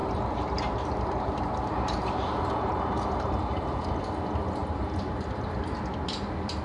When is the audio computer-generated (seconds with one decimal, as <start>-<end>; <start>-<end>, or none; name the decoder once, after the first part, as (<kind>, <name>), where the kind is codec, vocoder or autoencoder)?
0.0-4.0 (vocoder, BigVGAN v2); 4.6-5.4